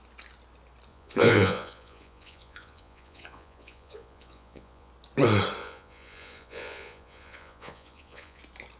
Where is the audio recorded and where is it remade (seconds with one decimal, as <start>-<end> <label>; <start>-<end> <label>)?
0.0-0.9 recorded; 0.9-4.9 remade; 4.9-5.6 recorded; 5.6-8.4 remade; 8.4-8.8 recorded